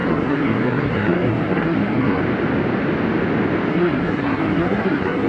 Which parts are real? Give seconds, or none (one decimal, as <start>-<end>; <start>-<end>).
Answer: 2.2-3.7